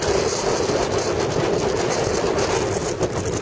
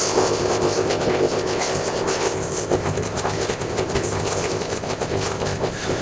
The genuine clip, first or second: first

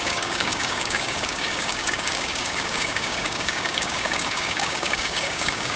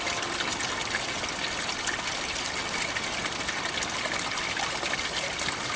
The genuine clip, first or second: second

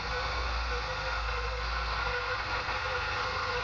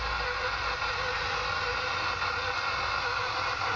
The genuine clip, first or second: second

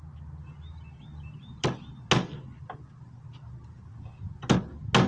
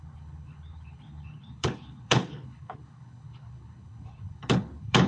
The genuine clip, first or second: first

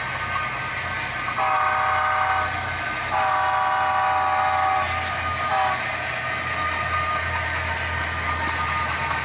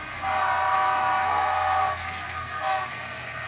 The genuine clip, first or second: first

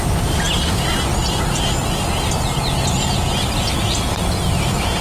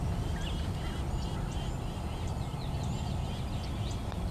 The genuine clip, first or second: first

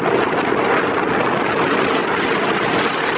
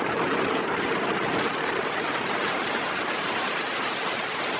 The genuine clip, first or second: first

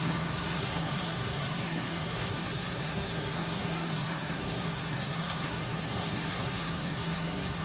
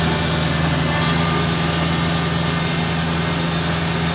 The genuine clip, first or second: second